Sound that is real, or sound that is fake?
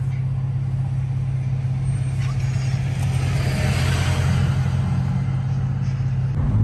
real